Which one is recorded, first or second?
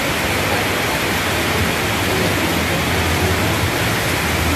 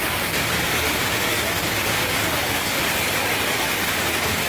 first